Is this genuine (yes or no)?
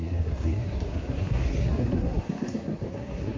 no